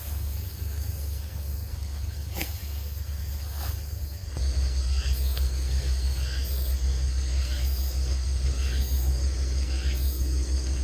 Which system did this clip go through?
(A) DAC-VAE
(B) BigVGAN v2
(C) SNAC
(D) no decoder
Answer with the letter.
C